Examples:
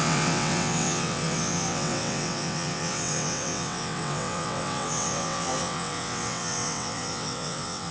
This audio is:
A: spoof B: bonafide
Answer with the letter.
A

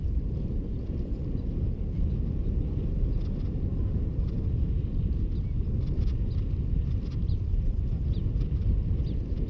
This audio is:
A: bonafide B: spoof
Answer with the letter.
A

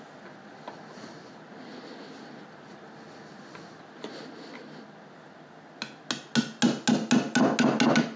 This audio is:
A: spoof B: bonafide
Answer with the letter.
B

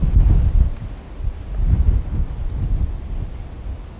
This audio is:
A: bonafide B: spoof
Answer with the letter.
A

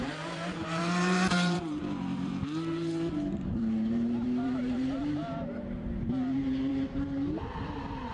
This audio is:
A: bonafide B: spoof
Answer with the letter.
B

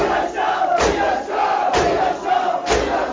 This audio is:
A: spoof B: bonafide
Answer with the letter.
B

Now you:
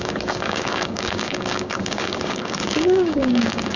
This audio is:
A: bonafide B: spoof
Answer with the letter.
B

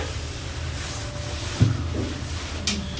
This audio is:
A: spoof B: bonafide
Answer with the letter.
B